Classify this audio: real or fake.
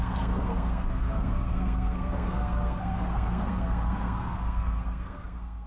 fake